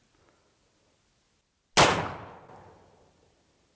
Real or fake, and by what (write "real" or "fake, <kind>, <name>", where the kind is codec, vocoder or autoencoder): real